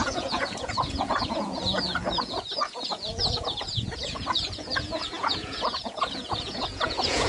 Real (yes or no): no